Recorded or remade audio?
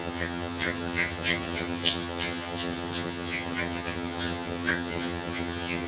remade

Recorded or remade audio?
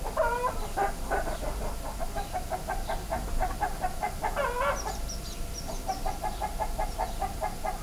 recorded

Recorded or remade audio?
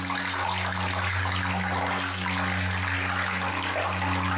recorded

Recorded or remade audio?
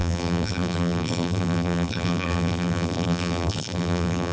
remade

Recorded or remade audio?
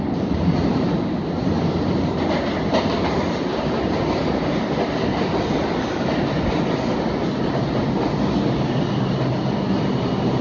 recorded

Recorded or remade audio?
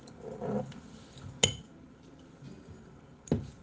recorded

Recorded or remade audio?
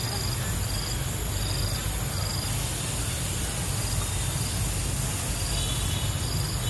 recorded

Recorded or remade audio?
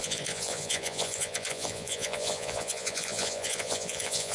remade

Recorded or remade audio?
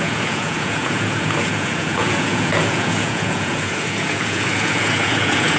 remade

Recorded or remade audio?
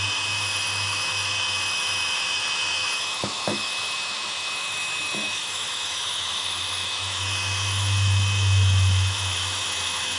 remade